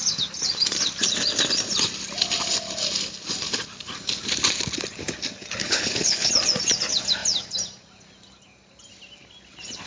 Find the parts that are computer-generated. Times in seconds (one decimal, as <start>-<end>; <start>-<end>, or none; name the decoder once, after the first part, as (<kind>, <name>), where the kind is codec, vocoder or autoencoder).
5.6-6.3 (codec, HILCodec)